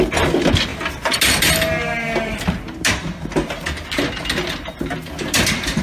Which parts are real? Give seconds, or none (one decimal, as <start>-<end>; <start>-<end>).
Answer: 0.0-5.8